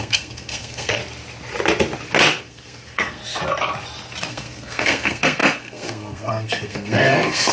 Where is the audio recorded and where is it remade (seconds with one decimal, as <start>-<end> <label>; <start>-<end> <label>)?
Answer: 0.0-1.0 remade; 1.0-2.4 recorded; 2.4-3.2 remade; 3.2-4.2 recorded; 4.2-7.5 remade